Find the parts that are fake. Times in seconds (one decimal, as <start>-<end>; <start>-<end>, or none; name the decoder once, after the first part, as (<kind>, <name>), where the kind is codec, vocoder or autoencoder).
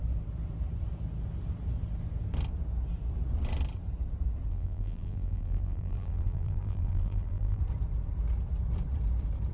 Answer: 4.5-7.6 (vocoder, BigVGAN v2)